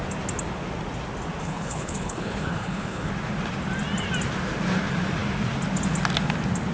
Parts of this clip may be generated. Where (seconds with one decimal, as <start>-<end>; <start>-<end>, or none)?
1.4-3.1